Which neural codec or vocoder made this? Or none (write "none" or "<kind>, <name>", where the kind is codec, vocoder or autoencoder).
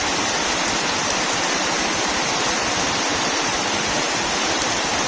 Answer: none